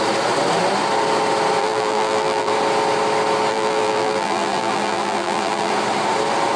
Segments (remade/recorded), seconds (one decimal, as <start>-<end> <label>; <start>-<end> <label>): 0.0-1.6 recorded; 1.6-2.5 remade; 2.5-3.5 recorded; 3.5-5.7 remade; 5.7-6.6 recorded